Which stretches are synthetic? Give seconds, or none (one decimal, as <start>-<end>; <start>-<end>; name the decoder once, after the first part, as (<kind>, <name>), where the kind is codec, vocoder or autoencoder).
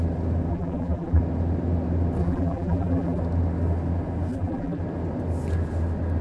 0.5-1.2 (vocoder, BigVGAN v2); 2.2-3.2; 4.3-4.8